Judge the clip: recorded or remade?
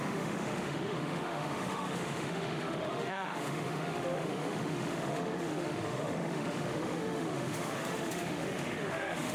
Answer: remade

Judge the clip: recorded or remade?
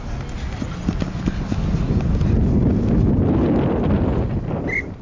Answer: recorded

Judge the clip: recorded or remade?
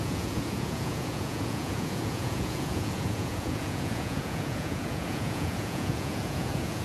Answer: remade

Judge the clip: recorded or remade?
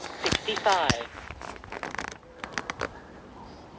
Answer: recorded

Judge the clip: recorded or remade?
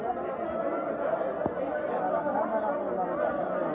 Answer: recorded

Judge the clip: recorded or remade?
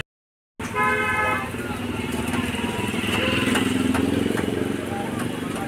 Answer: recorded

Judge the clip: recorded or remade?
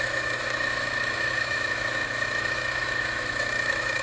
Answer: remade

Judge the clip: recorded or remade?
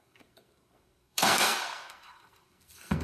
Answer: remade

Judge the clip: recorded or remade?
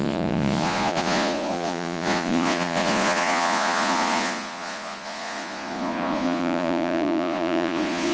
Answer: remade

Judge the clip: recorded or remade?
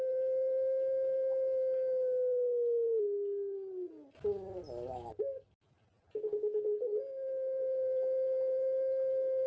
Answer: recorded